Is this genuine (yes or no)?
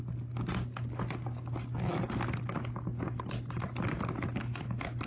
yes